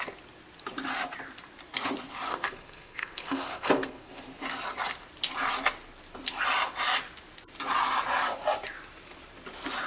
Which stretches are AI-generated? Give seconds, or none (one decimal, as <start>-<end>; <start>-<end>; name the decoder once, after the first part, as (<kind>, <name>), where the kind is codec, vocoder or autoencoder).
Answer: 2.3-4.2 (codec, SNAC)